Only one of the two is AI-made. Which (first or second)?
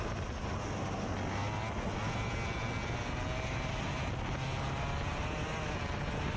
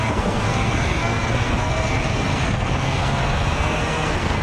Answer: second